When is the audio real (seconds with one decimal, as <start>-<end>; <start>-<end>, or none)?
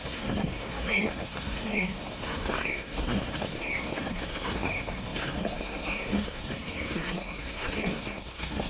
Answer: none